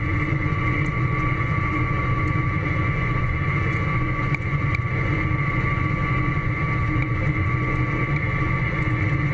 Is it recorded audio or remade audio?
remade